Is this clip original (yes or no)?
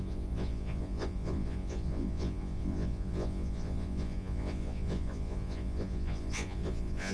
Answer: no